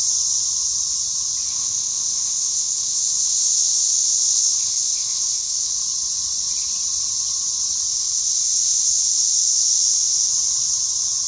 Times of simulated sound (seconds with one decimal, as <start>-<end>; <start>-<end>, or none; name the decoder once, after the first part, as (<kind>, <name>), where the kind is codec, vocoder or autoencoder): 1.5-5.7 (codec, ZipCodec); 7.9-10.3